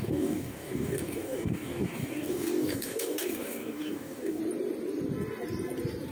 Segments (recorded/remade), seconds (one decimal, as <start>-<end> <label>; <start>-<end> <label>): 0.0-4.4 remade; 4.4-6.1 recorded